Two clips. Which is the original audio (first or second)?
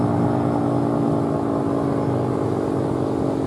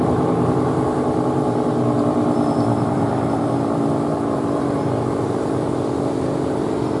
first